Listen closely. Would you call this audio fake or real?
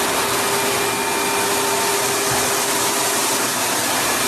real